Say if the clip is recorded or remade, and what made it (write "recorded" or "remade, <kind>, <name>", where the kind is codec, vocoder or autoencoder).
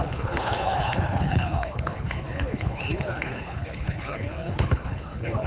remade, codec, HILCodec